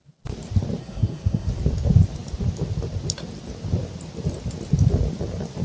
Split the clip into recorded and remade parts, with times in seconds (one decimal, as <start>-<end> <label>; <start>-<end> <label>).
0.0-0.8 recorded; 0.8-1.5 remade; 1.5-5.6 recorded